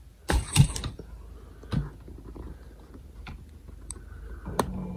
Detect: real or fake real